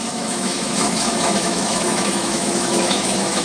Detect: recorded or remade remade